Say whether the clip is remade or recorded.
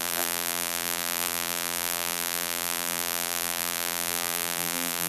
remade